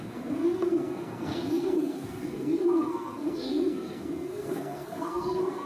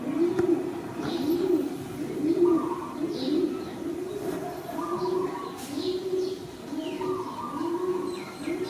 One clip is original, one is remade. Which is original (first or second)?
second